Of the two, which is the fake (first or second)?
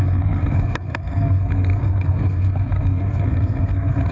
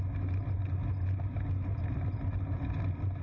first